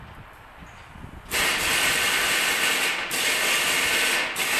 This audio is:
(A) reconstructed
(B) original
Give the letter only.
B